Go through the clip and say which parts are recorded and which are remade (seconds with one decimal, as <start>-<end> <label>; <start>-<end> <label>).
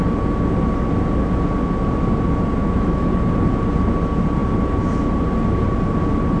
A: 0.0-2.6 recorded; 2.6-3.1 remade; 3.1-6.4 recorded